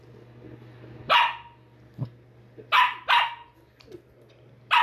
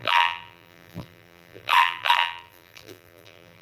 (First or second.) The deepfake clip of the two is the second